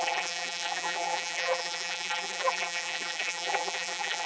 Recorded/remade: remade